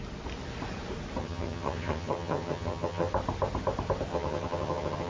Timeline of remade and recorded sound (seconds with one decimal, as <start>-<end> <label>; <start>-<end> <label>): 0.0-1.2 recorded; 1.2-3.1 remade; 3.1-4.1 recorded; 4.1-5.1 remade